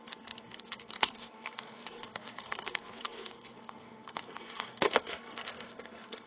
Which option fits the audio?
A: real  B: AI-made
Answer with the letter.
B